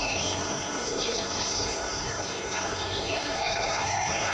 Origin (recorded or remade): remade